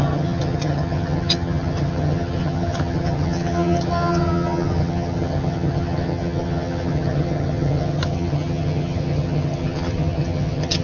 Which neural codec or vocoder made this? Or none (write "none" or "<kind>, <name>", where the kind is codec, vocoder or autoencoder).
vocoder, HiFi-GAN